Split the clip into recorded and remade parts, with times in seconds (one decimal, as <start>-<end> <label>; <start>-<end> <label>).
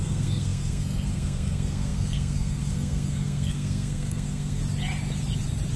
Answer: 0.0-4.6 remade; 4.6-5.8 recorded